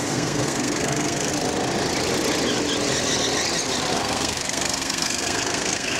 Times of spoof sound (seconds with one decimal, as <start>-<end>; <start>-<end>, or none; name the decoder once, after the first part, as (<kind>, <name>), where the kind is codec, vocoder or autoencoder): 0.0-1.3 (codec, SNAC); 3.9-6.0